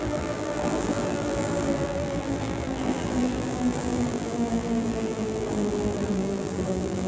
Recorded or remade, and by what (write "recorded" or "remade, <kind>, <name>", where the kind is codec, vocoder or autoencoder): remade, vocoder, BigVGAN v2